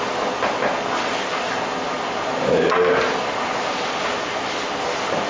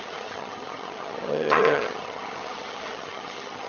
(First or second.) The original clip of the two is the first